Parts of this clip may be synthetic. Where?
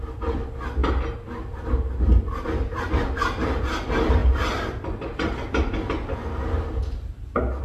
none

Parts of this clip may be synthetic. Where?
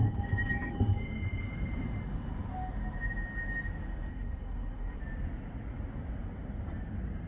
4.1-5.0 (codec, SNAC)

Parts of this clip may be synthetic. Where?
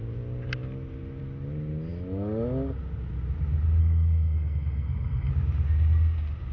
3.8-5.3 (codec, SNAC)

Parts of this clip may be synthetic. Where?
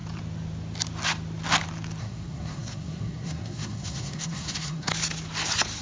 2.0-4.9 (codec, SNAC)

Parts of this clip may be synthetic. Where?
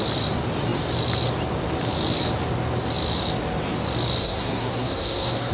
4.2-5.5 (codec, SNAC)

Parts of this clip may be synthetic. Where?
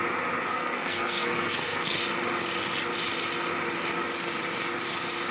0.5-2.0 (codec, SNAC)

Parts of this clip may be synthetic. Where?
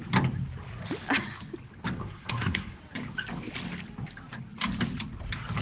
2.0-2.8 (codec, SNAC)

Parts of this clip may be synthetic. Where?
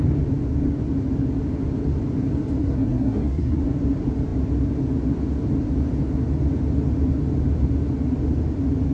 2.6-3.6 (codec, SNAC)